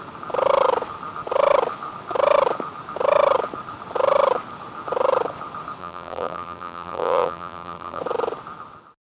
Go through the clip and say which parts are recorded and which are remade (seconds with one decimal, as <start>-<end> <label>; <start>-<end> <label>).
0.0-5.8 recorded; 5.8-8.0 remade; 8.0-9.1 recorded